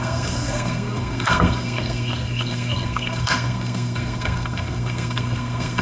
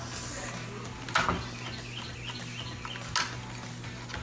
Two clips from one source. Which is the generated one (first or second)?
first